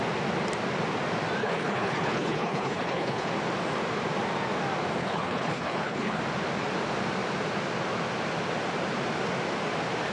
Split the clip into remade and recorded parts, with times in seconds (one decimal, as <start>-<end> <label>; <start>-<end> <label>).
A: 0.0-1.4 recorded; 1.4-3.3 remade; 3.3-5.0 recorded; 5.0-6.2 remade; 6.2-10.1 recorded